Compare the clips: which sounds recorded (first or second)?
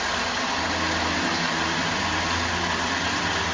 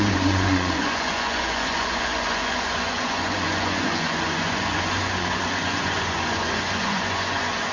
first